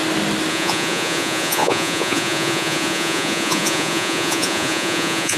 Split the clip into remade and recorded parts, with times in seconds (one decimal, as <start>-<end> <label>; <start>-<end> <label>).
0.0-0.5 recorded; 0.5-5.4 remade